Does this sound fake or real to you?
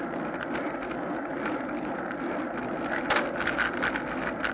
real